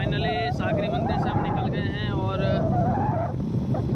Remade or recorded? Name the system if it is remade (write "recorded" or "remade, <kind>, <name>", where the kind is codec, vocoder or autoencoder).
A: recorded